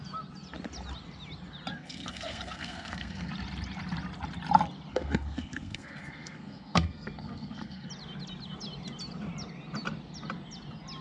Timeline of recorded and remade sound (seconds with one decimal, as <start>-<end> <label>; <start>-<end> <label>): 0.0-1.7 recorded; 1.7-3.3 remade; 3.3-4.9 recorded; 4.9-7.9 remade; 7.9-11.0 recorded